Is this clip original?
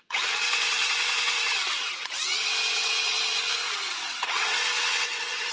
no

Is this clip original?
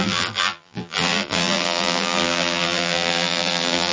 no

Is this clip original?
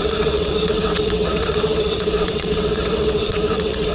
no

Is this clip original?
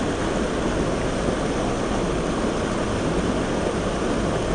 yes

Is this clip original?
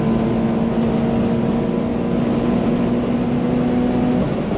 yes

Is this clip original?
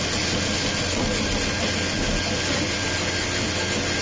yes